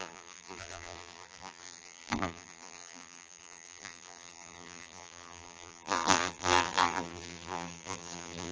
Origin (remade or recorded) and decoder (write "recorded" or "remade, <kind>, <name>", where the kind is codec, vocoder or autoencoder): remade, vocoder, BigVGAN v2